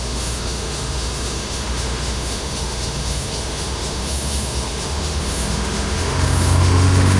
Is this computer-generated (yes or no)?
yes